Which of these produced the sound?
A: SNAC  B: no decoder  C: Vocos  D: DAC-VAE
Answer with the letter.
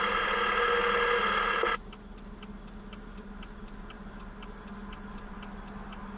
B